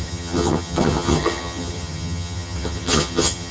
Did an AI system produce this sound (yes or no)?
yes